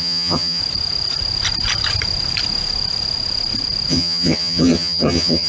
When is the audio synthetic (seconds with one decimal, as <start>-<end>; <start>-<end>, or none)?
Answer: 0.0-0.6; 3.9-5.5